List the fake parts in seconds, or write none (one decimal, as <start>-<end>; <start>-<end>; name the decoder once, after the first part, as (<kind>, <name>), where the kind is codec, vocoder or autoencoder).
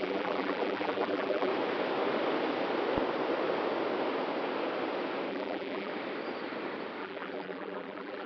0.0-1.5 (vocoder, BigVGAN v2); 5.3-5.9; 7.0-8.3